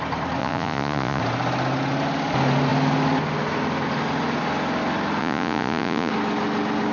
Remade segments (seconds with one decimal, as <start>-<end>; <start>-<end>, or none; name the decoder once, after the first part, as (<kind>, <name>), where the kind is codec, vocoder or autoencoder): 0.4-1.2 (vocoder, Vocos); 5.2-6.1